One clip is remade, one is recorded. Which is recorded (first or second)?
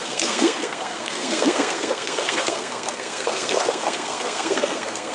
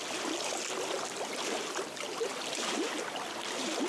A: second